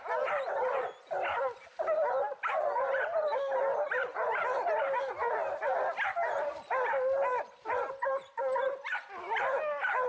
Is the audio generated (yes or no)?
no